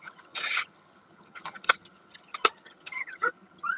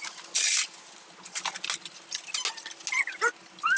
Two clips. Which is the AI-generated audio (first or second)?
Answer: first